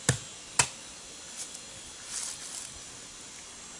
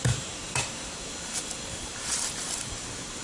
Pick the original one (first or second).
first